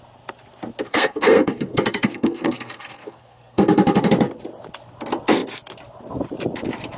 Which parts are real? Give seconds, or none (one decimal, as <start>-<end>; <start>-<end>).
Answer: 0.0-0.9; 4.1-7.0